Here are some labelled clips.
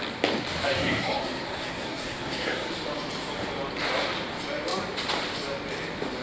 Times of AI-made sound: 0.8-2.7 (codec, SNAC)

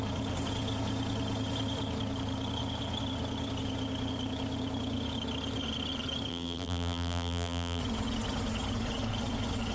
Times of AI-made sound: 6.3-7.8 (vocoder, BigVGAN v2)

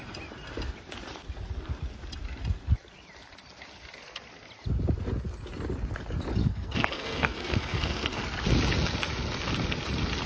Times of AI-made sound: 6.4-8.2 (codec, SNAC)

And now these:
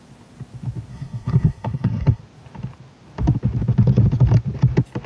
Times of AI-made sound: 0.9-2.2 (codec, SNAC)

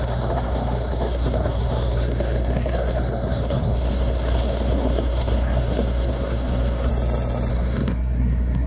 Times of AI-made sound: 0.0-6.9 (codec, SNAC); 7.5-8.7

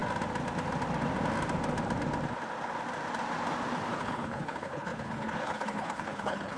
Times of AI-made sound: 4.0-6.6 (codec, HILCodec)

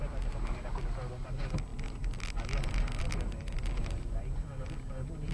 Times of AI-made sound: none